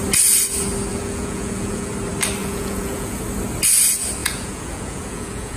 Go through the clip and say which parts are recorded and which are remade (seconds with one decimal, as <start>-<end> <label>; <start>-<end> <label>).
0.0-0.9 recorded; 0.9-1.9 remade; 1.9-2.4 recorded; 2.4-3.2 remade; 3.2-4.2 recorded; 4.2-5.6 remade